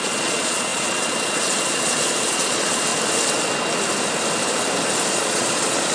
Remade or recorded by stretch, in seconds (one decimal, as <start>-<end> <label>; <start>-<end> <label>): 0.0-2.9 remade; 2.9-5.2 recorded; 5.2-5.9 remade